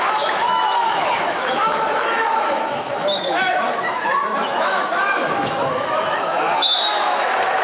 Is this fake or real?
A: fake